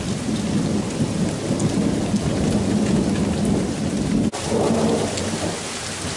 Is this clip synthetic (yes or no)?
no